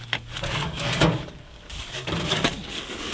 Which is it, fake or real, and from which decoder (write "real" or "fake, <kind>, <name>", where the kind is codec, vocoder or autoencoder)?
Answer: fake, codec, DAC